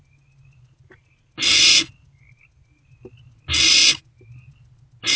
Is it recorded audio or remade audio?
recorded